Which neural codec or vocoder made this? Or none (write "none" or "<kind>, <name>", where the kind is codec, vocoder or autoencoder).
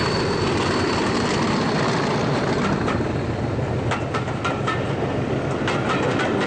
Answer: none